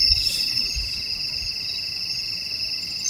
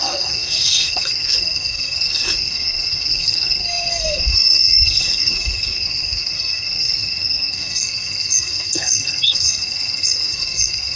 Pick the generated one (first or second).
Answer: second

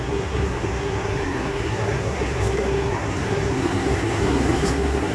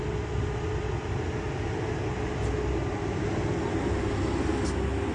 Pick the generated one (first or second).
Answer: first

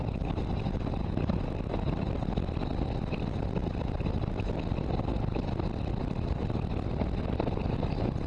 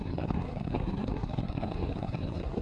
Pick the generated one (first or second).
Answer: second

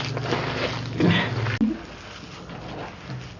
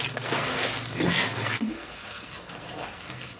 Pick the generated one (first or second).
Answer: second